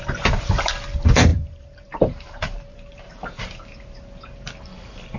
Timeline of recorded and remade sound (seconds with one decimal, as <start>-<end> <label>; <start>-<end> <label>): 0.0-1.3 recorded; 1.3-3.4 remade; 3.4-5.2 recorded